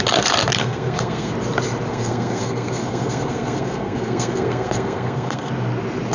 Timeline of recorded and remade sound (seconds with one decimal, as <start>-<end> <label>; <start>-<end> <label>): 0.0-0.6 recorded; 0.6-1.3 remade; 1.3-1.9 recorded; 1.9-5.5 remade; 5.5-6.1 recorded